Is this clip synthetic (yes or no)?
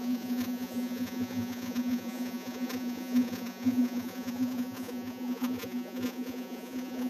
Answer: yes